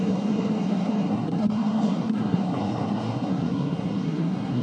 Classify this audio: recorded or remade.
remade